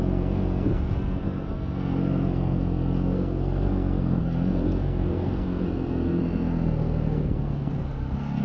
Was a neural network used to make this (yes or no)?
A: yes